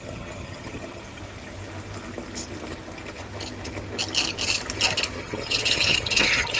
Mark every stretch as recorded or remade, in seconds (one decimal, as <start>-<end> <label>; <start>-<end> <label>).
0.0-1.2 remade; 1.2-5.2 recorded; 5.2-6.6 remade